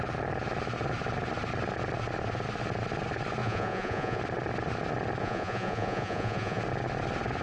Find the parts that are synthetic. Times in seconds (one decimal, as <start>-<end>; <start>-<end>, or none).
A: 3.4-4.2; 5.2-6.6